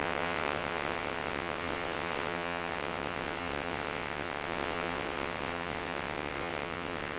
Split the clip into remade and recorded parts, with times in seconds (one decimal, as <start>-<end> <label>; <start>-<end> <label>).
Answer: 0.0-7.2 remade